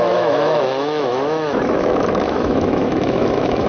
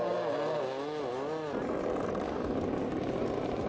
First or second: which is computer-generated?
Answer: first